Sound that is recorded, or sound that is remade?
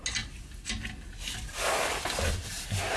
recorded